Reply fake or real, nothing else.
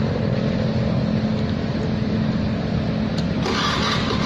real